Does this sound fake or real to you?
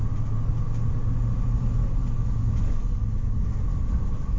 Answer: real